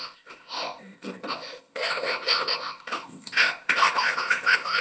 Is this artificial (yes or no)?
yes